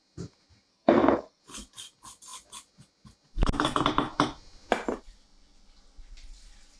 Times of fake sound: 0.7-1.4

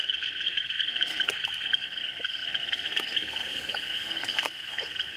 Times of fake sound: 0.0-5.2